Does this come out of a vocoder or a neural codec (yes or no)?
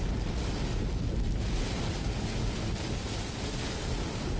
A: no